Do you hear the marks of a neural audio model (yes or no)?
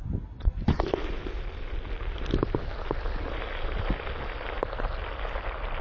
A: no